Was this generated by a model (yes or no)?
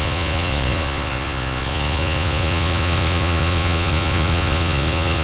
yes